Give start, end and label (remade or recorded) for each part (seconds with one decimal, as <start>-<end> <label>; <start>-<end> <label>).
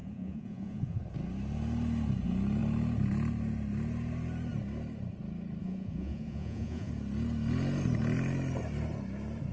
0.0-1.0 remade; 1.0-5.6 recorded; 5.6-6.9 remade; 6.9-9.5 recorded